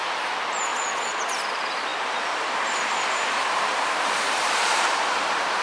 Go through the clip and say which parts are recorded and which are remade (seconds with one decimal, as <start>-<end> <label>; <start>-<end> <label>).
0.0-0.7 recorded; 0.7-1.2 remade; 1.2-5.6 recorded